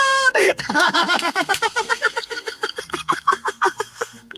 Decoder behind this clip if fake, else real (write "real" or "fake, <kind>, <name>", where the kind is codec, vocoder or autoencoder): fake, codec, SNAC